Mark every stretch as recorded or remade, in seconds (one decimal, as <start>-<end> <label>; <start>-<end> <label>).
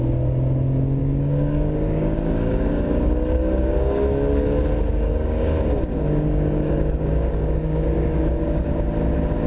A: 0.0-1.0 recorded; 1.0-4.6 remade; 4.6-5.1 recorded; 5.1-8.7 remade; 8.7-9.5 recorded